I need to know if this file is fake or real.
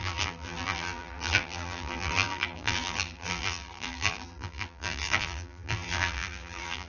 fake